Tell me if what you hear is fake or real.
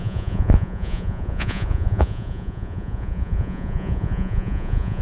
fake